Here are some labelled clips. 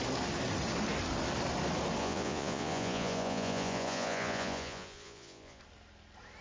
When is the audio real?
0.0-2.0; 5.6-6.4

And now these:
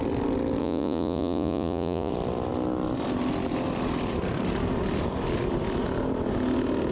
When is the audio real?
0.0-0.6; 2.1-6.9

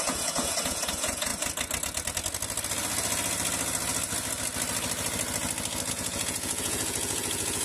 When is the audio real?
1.3-5.9

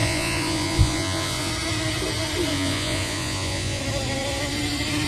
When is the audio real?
1.5-2.5; 3.8-5.1

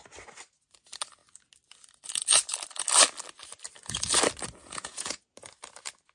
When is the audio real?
0.0-4.6; 5.2-6.1